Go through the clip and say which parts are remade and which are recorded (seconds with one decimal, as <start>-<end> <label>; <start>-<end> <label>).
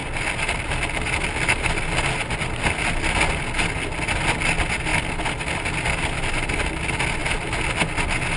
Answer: 0.0-8.4 recorded